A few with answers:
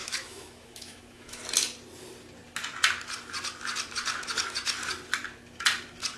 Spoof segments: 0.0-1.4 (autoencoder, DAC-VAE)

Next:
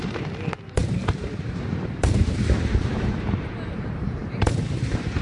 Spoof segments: 0.0-5.2 (vocoder, BigVGAN v2)

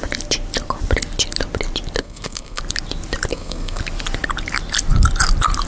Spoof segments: 2.0-2.6 (codec, SNAC); 3.3-3.8

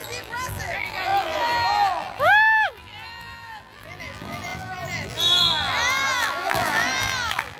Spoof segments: 0.0-7.6 (vocoder, BigVGAN v2)

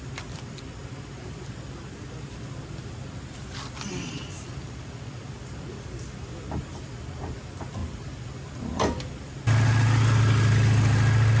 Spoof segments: none

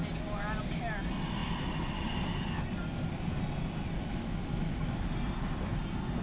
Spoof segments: 4.1-4.9 (autoencoder, DAC-VAE)

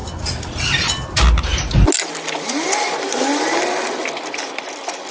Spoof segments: none